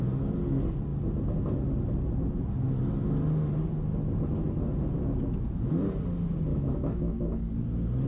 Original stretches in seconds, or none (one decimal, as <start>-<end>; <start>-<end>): 0.0-6.5; 7.2-8.1